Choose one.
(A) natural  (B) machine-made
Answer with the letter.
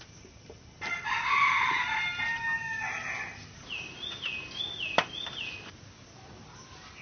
A